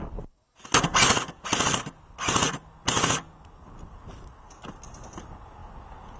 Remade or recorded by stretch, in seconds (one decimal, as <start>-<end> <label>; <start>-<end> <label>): 0.0-6.2 recorded